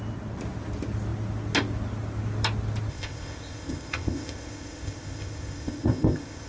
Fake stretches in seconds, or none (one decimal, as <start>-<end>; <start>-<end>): 2.9-6.5